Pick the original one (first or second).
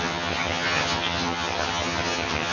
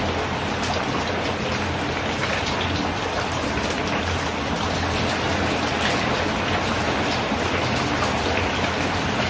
second